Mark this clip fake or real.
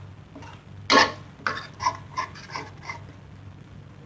real